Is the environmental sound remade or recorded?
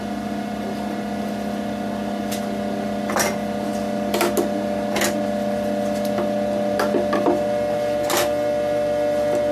recorded